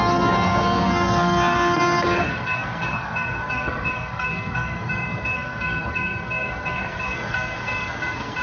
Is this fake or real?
fake